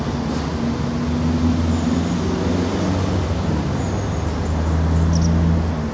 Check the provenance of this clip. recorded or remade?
recorded